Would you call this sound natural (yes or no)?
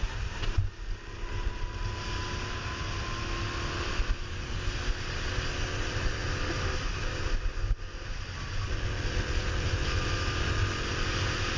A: yes